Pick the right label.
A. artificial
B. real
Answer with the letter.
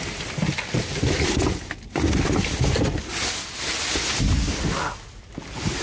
B